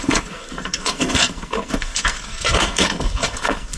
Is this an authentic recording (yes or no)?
no